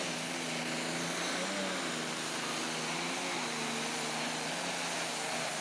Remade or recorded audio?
recorded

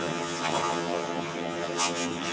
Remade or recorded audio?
remade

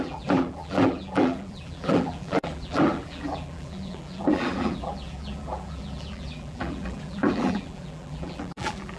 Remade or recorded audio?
remade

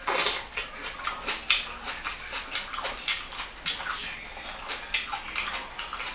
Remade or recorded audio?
recorded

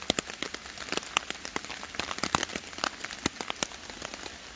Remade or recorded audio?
recorded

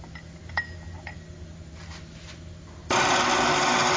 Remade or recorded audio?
recorded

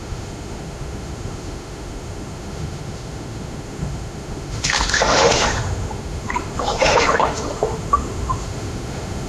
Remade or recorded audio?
remade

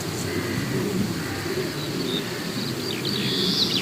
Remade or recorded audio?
recorded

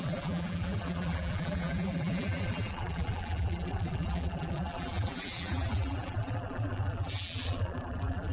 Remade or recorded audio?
remade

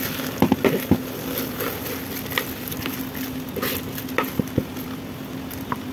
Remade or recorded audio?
recorded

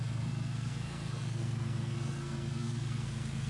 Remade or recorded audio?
remade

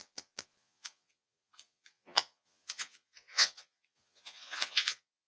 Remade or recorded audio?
remade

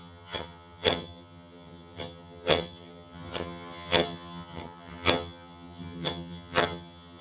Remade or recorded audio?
remade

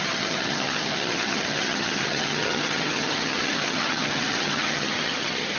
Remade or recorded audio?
remade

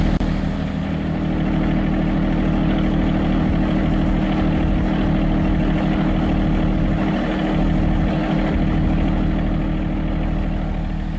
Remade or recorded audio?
recorded